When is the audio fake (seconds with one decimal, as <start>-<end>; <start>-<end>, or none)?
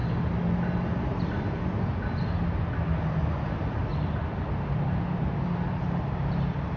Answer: 3.9-5.3